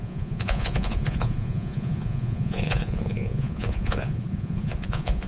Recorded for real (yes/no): no